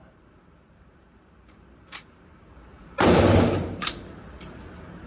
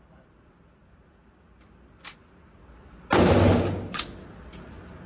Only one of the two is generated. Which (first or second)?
first